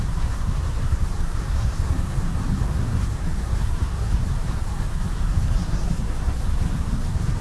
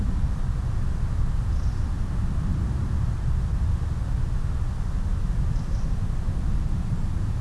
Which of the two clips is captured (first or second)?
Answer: second